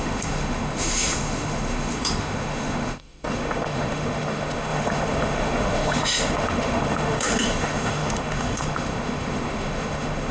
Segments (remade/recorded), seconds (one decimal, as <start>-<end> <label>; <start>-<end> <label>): 0.0-10.3 remade